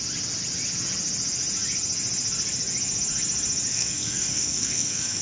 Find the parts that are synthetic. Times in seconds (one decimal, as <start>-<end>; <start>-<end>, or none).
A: 3.7-5.2